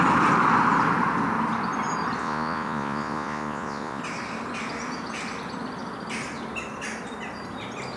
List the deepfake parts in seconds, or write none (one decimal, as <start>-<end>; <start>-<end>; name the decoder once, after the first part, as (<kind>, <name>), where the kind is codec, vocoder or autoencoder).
2.2-4.0 (vocoder, Vocos)

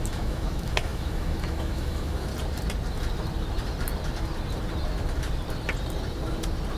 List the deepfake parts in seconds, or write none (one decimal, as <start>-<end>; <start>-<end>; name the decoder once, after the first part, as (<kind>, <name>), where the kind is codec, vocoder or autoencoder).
0.0-2.3 (autoencoder, DAC-VAE)

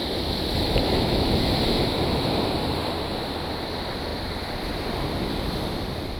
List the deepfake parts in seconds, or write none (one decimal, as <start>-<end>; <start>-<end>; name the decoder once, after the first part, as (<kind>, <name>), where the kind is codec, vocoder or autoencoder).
0.0-2.9 (vocoder, BigVGAN v2); 4.1-5.8

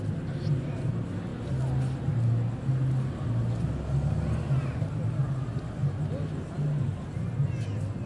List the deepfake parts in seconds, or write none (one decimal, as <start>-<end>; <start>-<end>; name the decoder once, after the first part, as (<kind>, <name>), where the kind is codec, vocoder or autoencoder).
none

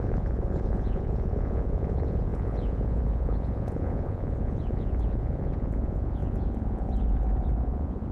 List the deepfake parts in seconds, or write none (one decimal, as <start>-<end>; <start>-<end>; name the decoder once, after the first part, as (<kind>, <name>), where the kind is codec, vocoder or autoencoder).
0.0-8.1 (vocoder, Vocos)

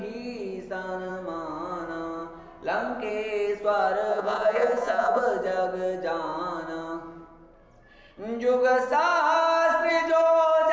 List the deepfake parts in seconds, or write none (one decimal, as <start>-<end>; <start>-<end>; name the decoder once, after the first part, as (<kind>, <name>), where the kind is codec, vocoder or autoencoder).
4.1-5.2 (vocoder, Vocos)

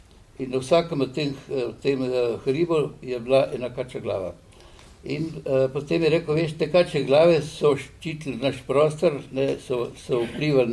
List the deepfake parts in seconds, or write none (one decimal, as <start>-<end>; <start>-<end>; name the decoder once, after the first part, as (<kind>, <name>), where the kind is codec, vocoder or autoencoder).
none